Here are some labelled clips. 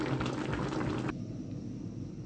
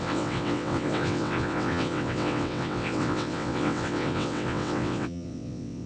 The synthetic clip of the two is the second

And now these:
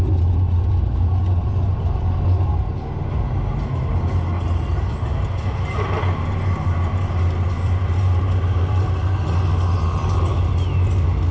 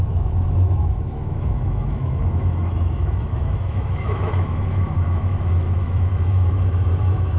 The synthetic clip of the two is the second